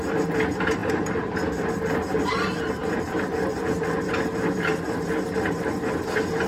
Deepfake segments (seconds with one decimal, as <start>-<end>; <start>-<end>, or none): 2.8-3.4